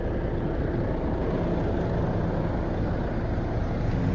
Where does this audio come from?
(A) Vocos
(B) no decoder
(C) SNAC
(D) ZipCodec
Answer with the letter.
B